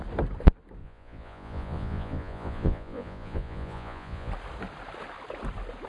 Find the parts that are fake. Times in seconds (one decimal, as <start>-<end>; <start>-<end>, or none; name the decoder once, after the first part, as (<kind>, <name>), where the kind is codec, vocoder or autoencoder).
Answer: 0.8-4.3 (vocoder, Vocos)